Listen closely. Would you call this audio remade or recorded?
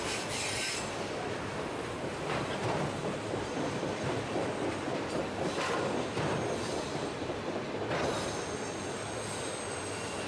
remade